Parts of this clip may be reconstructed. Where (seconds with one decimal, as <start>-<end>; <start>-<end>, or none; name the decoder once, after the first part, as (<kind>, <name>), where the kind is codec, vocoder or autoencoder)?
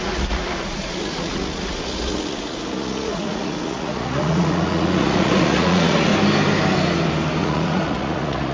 0.0-6.1 (vocoder, Vocos); 7.4-8.5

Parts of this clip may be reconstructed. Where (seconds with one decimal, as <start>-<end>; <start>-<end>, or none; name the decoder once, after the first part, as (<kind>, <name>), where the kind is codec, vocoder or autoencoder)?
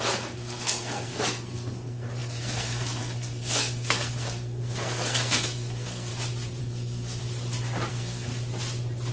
0.0-6.1 (codec, SNAC); 6.6-7.2; 7.9-8.3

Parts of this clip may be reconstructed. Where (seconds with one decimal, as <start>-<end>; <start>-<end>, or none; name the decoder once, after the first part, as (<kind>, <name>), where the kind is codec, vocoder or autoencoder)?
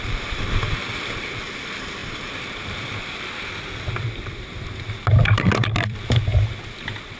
0.0-6.3 (vocoder, BigVGAN v2)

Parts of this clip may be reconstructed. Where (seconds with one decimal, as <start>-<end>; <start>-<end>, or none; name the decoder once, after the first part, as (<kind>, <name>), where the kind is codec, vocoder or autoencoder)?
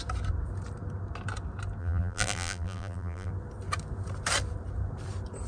1.8-3.3 (vocoder, BigVGAN v2)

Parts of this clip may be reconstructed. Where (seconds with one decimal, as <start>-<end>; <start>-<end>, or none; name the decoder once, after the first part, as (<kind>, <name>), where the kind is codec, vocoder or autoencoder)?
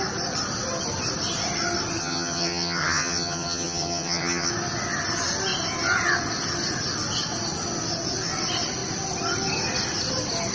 2.0-4.5 (vocoder, HiFi-GAN)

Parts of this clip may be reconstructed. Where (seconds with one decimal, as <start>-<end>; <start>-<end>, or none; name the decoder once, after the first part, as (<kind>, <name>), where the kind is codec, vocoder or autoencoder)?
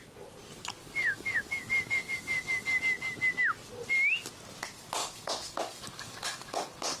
0.8-2.8 (codec, DAC); 5.0-7.0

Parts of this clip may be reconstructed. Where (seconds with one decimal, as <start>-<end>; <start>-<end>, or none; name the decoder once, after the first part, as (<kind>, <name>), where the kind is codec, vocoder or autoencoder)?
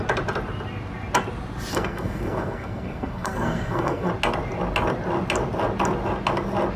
1.7-4.1 (codec, SNAC)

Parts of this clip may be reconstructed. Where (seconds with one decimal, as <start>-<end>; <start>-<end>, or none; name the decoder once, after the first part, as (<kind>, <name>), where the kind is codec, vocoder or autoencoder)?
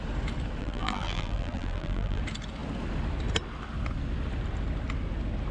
0.6-2.2 (vocoder, BigVGAN v2)